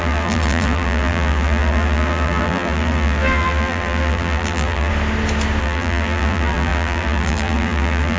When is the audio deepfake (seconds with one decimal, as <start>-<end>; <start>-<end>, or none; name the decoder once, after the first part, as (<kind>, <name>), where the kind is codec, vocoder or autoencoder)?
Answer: 0.0-4.9 (vocoder, BigVGAN v2); 5.6-8.2